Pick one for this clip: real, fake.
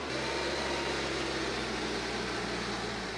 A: real